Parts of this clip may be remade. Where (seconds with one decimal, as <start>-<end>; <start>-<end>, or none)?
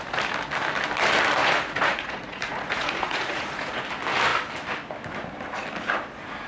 1.4-3.8